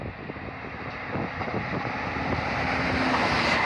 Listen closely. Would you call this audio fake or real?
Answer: real